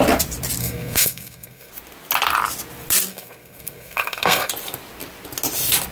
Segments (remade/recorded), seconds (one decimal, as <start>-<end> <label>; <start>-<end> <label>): 0.0-0.6 recorded; 0.6-1.7 remade; 1.7-3.1 recorded; 3.1-4.5 remade; 4.5-5.9 recorded